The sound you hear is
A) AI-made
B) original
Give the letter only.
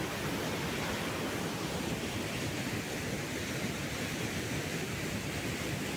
B